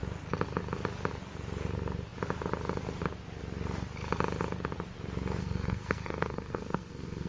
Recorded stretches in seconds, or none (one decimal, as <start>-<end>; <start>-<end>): 0.0-5.4